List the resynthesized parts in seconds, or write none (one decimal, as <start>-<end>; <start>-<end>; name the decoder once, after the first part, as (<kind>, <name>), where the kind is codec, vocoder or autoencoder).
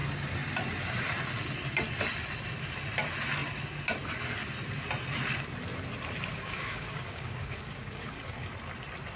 6.3-8.5 (codec, DAC)